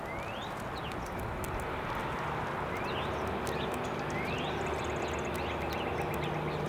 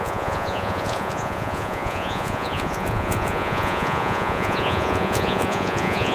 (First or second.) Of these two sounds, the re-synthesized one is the second